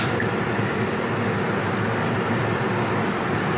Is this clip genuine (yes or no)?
yes